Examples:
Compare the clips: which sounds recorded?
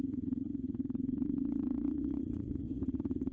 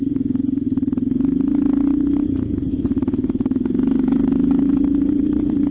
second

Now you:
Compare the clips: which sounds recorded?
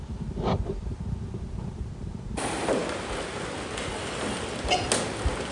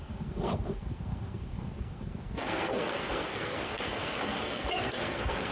first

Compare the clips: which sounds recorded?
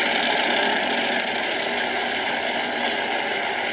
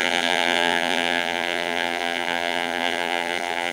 first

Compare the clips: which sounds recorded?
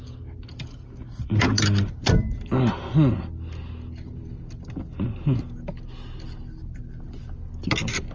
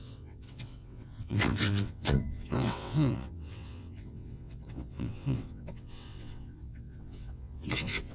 first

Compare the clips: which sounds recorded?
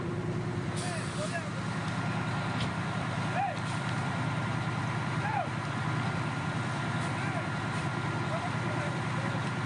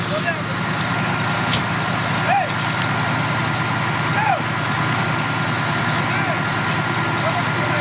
second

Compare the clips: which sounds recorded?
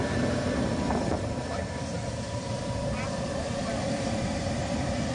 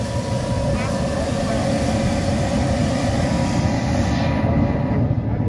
second